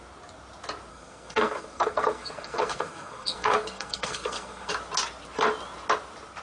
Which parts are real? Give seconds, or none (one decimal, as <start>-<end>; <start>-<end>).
0.0-0.9; 4.7-6.4